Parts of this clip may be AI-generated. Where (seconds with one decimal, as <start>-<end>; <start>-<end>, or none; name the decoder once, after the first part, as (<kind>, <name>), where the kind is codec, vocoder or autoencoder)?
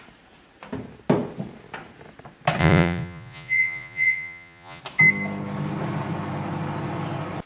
2.6-4.8 (vocoder, Vocos)